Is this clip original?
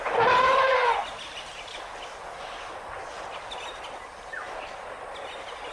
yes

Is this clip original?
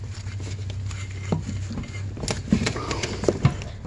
yes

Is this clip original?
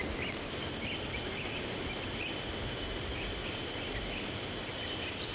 yes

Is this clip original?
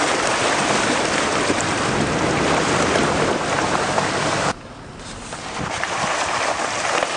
no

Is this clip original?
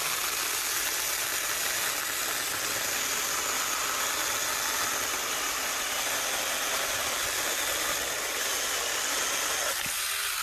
yes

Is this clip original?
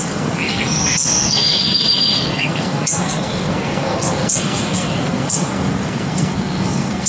no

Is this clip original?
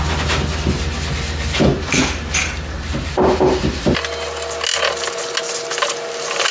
yes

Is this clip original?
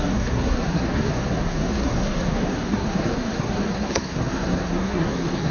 no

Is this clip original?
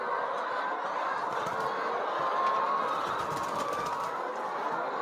yes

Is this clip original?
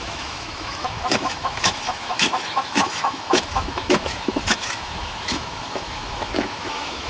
no